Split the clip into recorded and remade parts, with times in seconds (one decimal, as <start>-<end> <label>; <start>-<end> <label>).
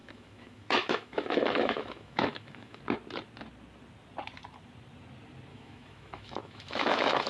0.0-2.8 remade; 2.8-5.5 recorded; 5.5-7.3 remade